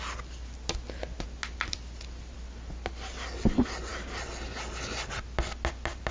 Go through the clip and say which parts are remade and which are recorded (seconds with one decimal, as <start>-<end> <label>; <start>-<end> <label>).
0.0-6.1 recorded